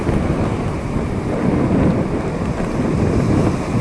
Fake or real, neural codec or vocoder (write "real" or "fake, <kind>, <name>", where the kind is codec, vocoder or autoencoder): real